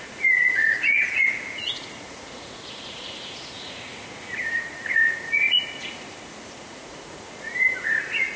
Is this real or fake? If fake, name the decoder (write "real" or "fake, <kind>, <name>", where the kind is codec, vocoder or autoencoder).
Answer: fake, vocoder, Vocos